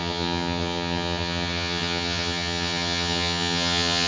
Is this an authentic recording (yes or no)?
no